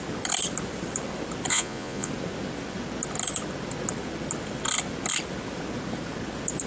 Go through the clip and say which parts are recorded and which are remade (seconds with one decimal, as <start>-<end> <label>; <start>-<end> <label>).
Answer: 0.0-1.5 recorded; 1.5-2.1 remade; 2.1-6.7 recorded